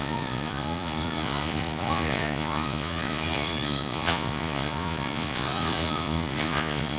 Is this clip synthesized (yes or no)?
yes